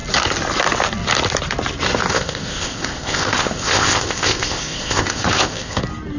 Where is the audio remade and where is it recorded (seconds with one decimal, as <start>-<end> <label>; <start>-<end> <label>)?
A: 0.0-2.1 recorded; 2.1-5.8 remade; 5.8-6.2 recorded